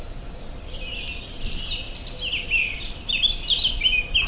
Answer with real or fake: real